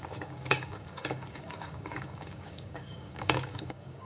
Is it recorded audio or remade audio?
remade